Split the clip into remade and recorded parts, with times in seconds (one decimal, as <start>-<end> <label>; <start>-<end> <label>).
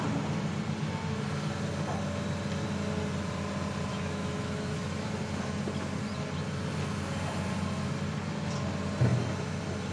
0.0-3.9 recorded; 3.9-5.1 remade; 5.1-9.9 recorded